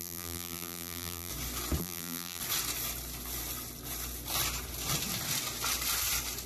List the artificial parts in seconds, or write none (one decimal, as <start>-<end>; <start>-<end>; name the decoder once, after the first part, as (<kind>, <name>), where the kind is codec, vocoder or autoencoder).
0.0-1.3 (vocoder, BigVGAN v2); 1.8-2.4